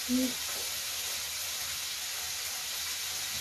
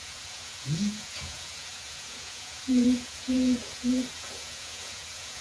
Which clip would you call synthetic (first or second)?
second